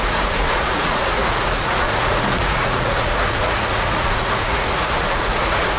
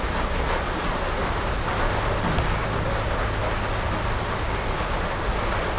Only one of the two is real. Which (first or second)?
second